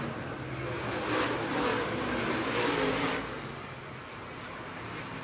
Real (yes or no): yes